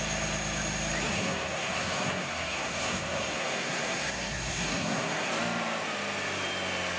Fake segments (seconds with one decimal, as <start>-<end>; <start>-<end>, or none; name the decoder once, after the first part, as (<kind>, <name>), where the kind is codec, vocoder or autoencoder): 1.1-5.3 (codec, SNAC)